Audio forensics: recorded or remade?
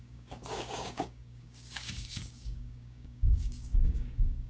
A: remade